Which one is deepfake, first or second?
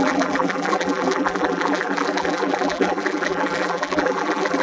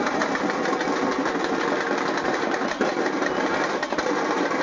first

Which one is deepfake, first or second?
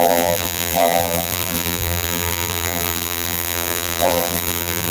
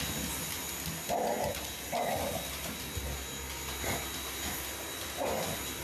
first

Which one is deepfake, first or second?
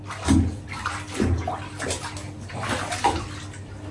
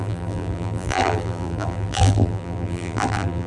second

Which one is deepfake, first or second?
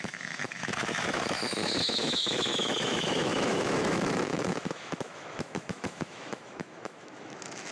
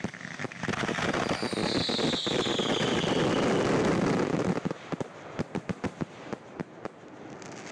first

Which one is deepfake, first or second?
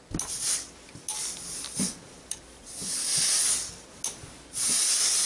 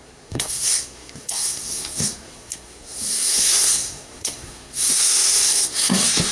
second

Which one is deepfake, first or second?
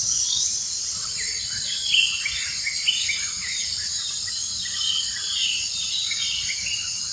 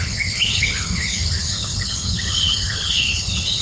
second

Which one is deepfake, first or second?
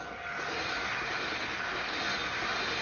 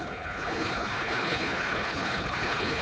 second